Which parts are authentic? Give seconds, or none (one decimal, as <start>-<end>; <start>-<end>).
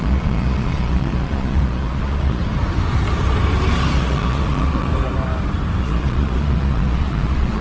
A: 2.4-4.0; 4.9-5.8